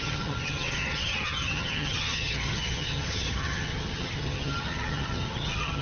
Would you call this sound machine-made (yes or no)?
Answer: yes